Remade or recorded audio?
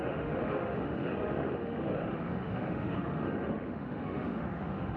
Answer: remade